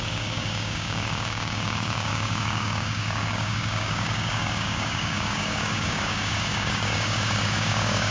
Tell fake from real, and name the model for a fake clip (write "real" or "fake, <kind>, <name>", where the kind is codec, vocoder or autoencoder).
fake, codec, DAC